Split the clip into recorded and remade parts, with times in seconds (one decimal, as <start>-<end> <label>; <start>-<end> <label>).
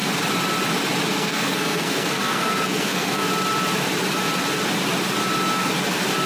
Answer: 0.0-1.1 recorded; 1.1-3.3 remade; 3.3-6.3 recorded